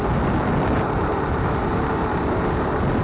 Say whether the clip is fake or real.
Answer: real